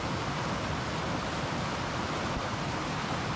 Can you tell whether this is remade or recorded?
recorded